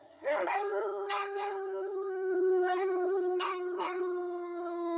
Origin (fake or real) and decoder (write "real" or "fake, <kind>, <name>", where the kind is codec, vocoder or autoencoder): fake, codec, SNAC